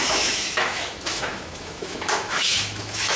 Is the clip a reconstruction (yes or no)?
yes